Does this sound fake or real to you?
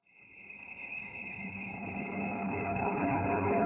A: fake